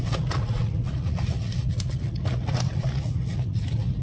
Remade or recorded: remade